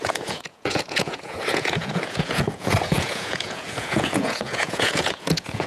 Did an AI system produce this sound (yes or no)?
yes